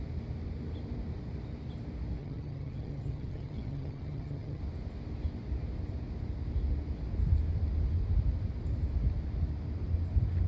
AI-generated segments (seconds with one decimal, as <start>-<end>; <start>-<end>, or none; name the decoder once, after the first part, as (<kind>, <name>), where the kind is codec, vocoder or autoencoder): 2.2-4.6 (vocoder, HiFi-GAN)